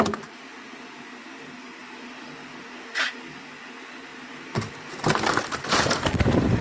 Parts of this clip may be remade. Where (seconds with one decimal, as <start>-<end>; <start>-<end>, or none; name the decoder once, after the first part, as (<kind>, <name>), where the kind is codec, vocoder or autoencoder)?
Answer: 4.1-5.2 (vocoder, BigVGAN v2)